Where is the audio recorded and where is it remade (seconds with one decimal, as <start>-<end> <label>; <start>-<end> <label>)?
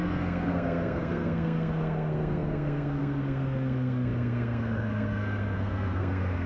0.0-6.5 remade